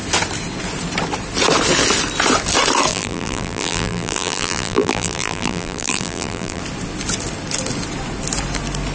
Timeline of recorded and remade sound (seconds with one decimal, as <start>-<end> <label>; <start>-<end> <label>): 0.0-2.9 recorded; 2.9-6.6 remade; 6.6-8.9 recorded